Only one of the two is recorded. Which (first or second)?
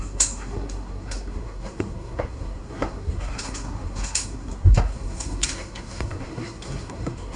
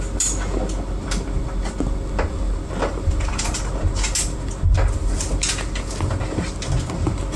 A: second